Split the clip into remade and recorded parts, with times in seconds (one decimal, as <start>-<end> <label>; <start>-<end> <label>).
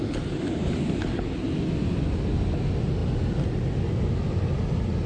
0.0-5.1 recorded